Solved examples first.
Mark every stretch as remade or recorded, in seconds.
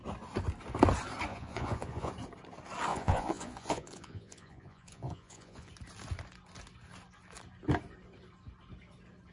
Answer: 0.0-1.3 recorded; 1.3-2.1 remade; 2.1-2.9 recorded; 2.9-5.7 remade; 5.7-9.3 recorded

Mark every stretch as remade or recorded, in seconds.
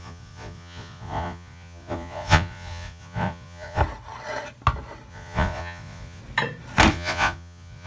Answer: 0.0-3.8 remade; 3.8-5.1 recorded; 5.1-6.2 remade; 6.2-6.9 recorded; 6.9-7.9 remade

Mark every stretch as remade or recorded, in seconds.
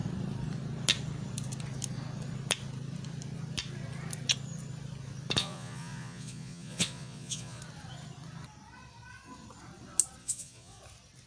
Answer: 0.0-5.4 recorded; 5.4-7.6 remade; 7.6-10.2 recorded; 10.2-10.8 remade; 10.8-11.3 recorded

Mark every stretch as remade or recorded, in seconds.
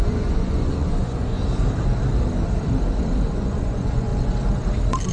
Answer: 0.0-1.4 remade; 1.4-3.1 recorded; 3.1-4.1 remade; 4.1-5.1 recorded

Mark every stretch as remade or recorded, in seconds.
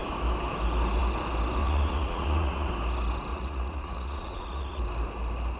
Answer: 0.0-1.6 recorded; 1.6-2.7 remade; 2.7-3.3 recorded; 3.3-4.8 remade; 4.8-5.6 recorded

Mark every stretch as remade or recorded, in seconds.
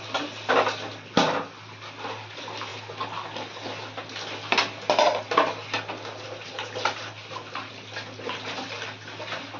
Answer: 0.0-9.6 recorded